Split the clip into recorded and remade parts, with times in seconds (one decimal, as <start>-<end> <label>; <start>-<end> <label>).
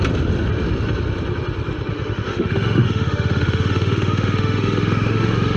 0.0-1.9 recorded; 1.9-5.6 remade